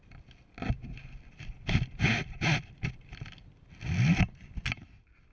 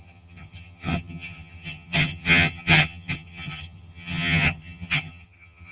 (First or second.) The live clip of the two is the first